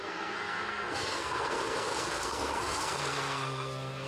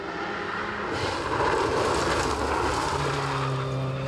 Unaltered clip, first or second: second